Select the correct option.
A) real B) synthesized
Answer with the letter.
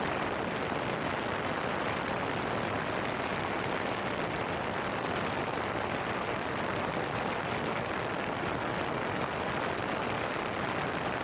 A